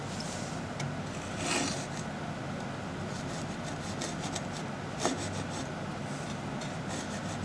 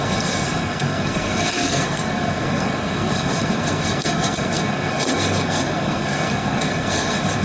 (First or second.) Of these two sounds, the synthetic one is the second